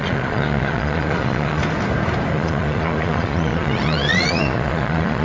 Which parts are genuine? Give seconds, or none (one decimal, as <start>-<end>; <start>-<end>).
1.6-2.3